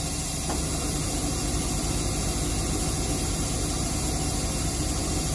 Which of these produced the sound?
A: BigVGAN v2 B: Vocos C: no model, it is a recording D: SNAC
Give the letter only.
C